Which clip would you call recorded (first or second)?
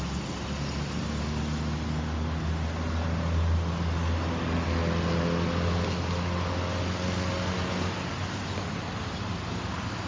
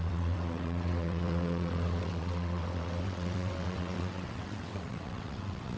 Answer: first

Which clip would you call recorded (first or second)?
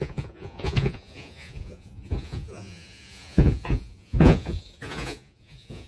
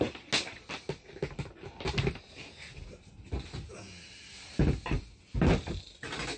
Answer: second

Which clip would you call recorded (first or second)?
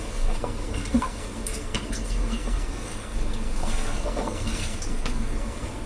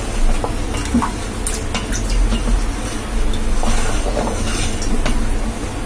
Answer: second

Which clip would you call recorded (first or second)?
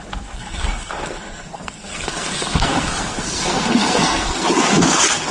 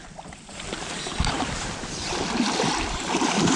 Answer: second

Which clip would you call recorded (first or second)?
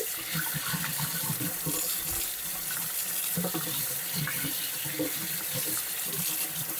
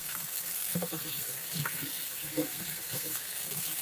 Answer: first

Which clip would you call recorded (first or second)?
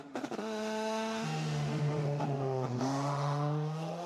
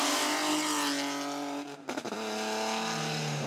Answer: second